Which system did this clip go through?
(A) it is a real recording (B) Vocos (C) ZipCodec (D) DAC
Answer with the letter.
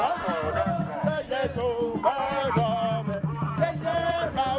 A